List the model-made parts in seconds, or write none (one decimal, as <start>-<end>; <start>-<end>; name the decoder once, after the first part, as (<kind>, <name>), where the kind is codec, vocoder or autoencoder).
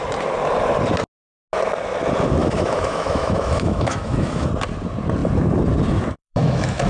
2.4-4.5 (autoencoder, DAC-VAE); 6.2-6.9